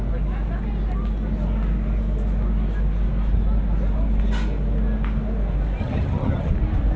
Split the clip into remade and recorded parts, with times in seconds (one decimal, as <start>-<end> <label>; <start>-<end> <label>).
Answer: 0.0-5.8 recorded; 5.8-6.5 remade; 6.5-7.0 recorded